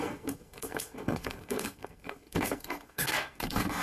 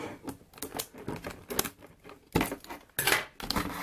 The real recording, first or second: second